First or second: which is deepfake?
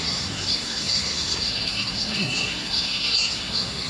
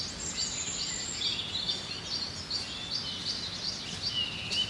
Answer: first